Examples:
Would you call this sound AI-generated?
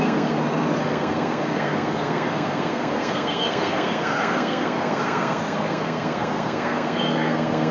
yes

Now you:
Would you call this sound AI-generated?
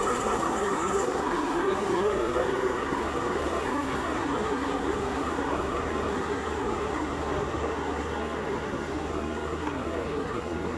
yes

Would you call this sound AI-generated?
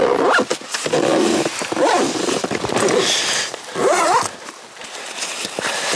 no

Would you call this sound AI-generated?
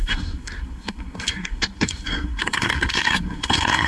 yes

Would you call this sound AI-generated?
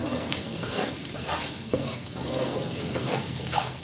yes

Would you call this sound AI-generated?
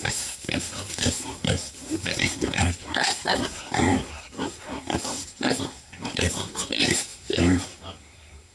yes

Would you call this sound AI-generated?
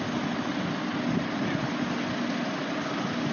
no